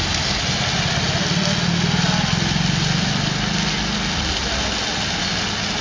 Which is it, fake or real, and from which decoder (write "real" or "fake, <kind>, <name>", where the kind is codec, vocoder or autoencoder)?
real